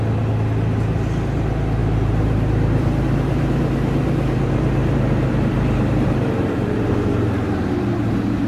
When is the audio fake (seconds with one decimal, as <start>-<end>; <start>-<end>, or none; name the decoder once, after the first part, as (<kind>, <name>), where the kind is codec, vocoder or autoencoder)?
1.8-6.9 (vocoder, BigVGAN v2)